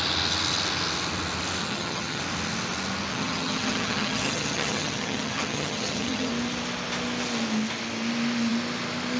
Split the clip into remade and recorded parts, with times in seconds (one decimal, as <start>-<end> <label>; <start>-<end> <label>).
0.0-1.6 recorded; 1.6-2.2 remade; 2.2-3.1 recorded; 3.1-6.3 remade; 6.3-9.2 recorded